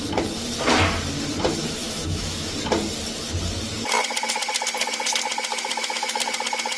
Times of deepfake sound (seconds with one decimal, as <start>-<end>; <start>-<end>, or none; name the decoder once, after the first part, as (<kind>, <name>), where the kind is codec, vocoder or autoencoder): 1.8-2.5 (autoencoder, DAC-VAE); 5.5-6.2